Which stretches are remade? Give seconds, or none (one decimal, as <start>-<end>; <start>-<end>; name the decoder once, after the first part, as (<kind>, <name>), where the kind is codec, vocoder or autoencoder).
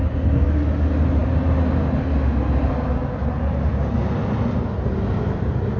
none